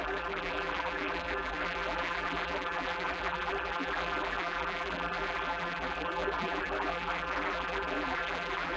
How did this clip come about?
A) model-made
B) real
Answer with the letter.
A